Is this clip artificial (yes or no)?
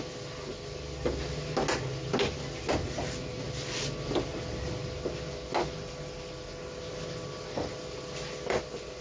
no